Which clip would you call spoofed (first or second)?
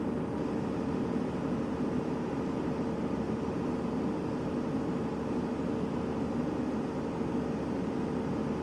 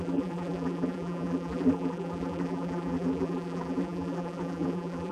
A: second